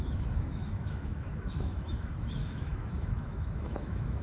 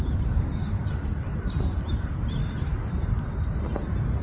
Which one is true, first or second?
second